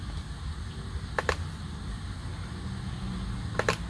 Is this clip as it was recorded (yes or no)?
yes